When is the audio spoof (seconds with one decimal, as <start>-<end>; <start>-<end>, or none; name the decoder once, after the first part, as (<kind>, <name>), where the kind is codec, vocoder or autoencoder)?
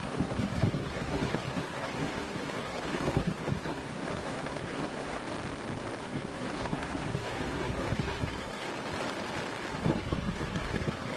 0.0-5.2 (codec, SNAC); 6.0-8.7; 9.7-11.2